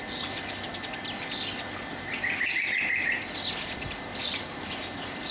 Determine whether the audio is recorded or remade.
recorded